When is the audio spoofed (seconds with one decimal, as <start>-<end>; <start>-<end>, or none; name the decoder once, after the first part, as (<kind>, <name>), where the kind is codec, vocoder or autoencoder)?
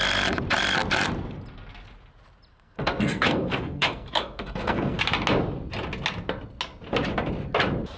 2.5-5.0 (codec, SNAC)